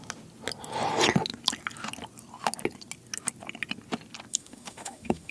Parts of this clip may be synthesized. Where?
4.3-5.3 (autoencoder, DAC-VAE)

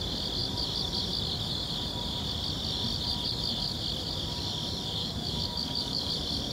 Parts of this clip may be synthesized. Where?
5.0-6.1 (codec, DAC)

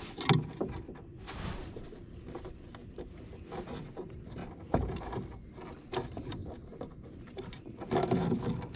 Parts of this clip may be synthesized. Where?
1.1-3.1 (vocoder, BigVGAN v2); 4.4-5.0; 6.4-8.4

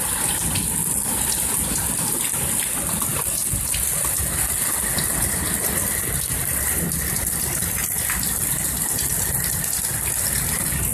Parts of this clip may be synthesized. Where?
none

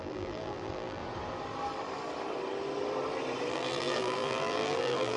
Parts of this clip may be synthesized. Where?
0.0-1.0 (vocoder, BigVGAN v2); 3.5-5.2

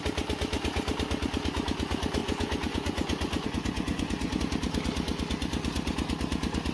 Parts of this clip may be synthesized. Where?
2.2-4.4 (vocoder, Vocos)

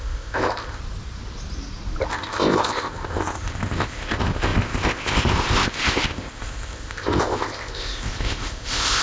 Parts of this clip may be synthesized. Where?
0.0-0.8 (codec, ZipCodec); 2.1-9.0

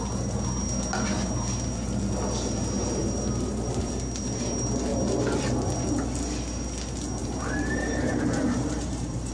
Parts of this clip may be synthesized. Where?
3.0-3.9 (vocoder, BigVGAN v2); 4.9-5.4; 7.2-9.3